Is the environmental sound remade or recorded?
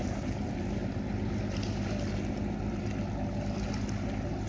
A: recorded